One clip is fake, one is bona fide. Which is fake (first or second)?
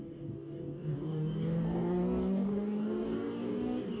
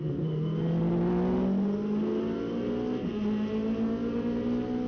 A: first